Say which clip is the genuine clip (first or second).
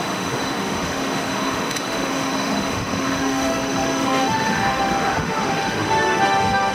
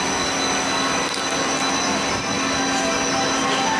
second